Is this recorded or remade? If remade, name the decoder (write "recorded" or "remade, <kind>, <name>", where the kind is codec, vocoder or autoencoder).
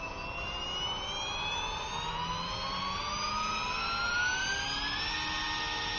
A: recorded